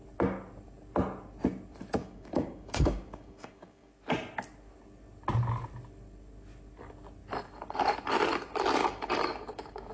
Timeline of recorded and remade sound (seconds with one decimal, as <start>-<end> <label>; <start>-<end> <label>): 0.0-2.0 recorded; 2.0-3.9 remade; 3.9-8.8 recorded; 8.8-9.9 remade